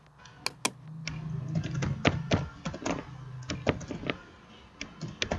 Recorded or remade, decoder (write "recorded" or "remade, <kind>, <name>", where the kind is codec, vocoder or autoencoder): recorded